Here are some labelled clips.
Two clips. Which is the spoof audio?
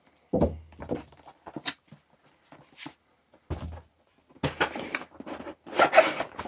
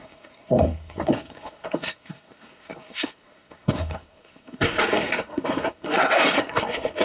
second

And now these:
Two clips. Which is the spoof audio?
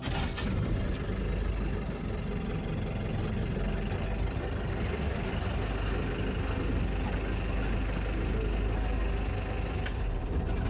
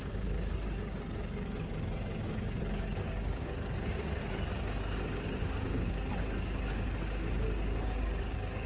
second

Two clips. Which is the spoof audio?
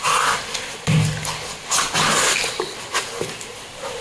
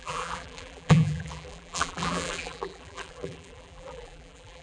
second